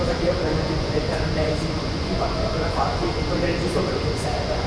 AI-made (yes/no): yes